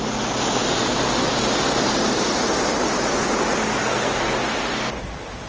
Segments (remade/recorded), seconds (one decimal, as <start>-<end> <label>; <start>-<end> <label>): 0.0-3.8 recorded; 3.8-4.3 remade; 4.3-5.5 recorded